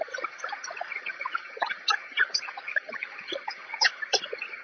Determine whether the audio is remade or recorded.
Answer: remade